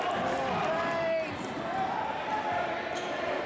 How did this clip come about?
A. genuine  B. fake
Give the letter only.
A